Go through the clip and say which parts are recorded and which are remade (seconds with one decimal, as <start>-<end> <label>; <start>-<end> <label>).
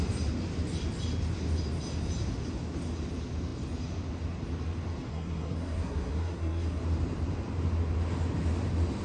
0.0-5.1 recorded; 5.1-6.8 remade; 6.8-9.0 recorded